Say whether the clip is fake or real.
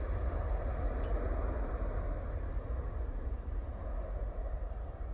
real